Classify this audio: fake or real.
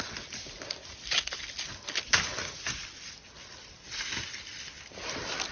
real